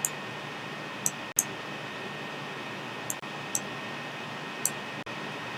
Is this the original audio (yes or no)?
yes